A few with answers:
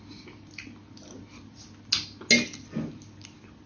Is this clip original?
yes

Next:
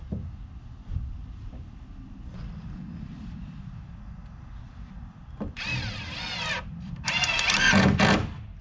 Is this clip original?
yes